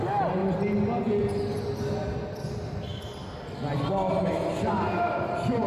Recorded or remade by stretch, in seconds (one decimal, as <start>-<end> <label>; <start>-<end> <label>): 0.0-5.7 recorded